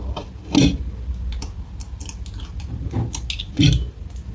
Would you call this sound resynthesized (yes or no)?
no